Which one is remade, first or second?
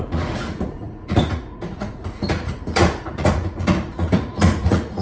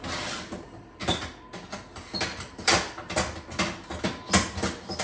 first